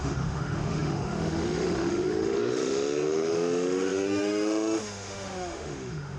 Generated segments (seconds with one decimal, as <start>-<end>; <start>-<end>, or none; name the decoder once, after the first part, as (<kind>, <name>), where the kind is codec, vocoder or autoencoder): 0.0-6.2 (autoencoder, DAC-VAE)